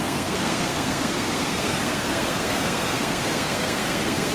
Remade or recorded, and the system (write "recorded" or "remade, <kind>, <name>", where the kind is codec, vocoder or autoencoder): remade, codec, SNAC